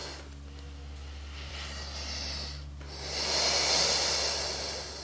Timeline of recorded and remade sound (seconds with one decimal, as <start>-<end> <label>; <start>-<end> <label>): 0.0-5.0 recorded